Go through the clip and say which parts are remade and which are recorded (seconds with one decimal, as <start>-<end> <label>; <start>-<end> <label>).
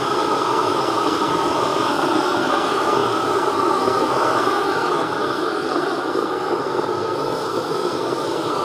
0.0-8.6 remade